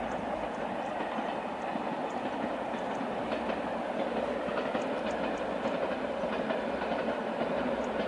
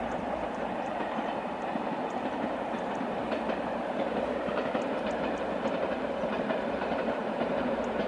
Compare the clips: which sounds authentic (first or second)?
first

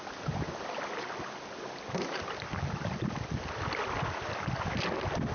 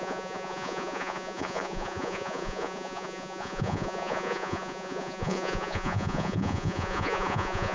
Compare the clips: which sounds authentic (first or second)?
first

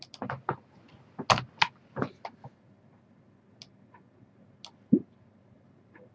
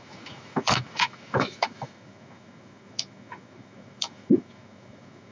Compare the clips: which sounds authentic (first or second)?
first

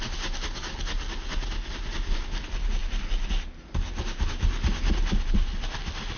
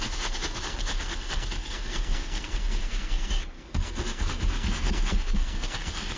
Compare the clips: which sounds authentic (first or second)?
first